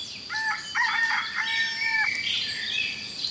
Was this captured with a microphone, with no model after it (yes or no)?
yes